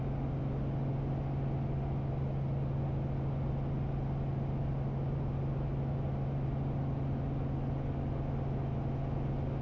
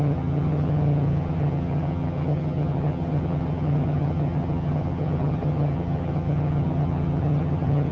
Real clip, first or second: first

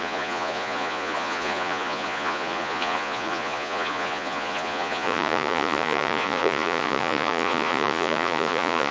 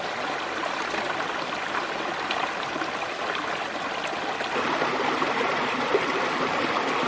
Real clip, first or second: second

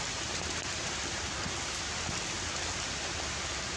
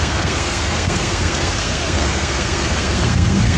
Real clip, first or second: first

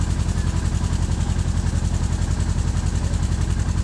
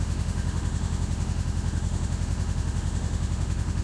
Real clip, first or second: first